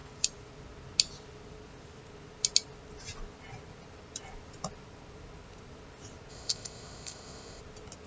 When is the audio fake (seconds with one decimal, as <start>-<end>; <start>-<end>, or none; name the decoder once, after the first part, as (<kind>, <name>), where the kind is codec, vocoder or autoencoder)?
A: 6.3-7.6 (codec, ZipCodec)